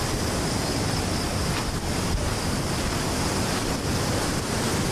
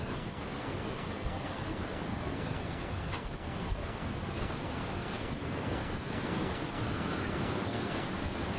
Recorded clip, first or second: first